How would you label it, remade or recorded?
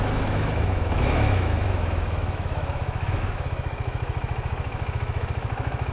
remade